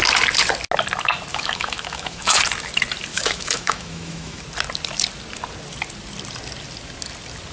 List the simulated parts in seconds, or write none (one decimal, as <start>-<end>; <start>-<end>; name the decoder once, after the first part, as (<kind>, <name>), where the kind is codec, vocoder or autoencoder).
1.3-2.4 (autoencoder, DAC-VAE); 3.1-4.4